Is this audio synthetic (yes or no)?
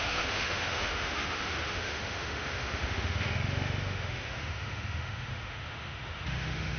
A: yes